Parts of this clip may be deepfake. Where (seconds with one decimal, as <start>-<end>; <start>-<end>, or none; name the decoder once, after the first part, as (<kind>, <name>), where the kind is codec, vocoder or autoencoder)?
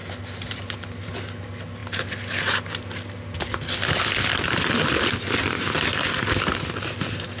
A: 0.0-0.8 (vocoder, BigVGAN v2)